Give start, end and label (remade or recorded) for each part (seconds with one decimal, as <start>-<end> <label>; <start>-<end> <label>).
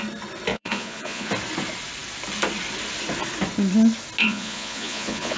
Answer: 0.0-0.5 recorded; 0.5-1.3 remade; 1.3-4.2 recorded; 4.2-5.4 remade